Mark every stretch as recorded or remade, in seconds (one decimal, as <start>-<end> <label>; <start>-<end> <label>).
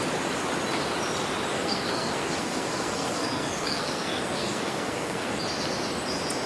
0.0-1.5 recorded; 1.5-5.4 remade; 5.4-6.5 recorded